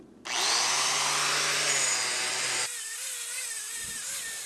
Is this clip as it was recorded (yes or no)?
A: yes